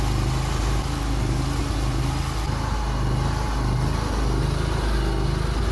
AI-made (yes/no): no